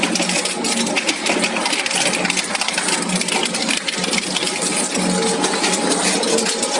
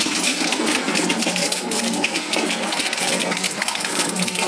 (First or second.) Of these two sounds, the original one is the first